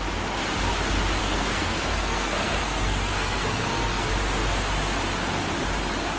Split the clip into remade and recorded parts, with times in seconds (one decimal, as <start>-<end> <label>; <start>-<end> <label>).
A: 0.0-1.2 recorded; 1.2-4.1 remade; 4.1-6.2 recorded